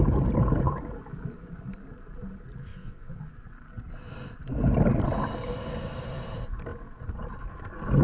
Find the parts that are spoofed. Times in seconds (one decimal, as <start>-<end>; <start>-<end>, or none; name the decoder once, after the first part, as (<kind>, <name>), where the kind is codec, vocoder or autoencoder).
2.7-3.2 (vocoder, WaveNeXt)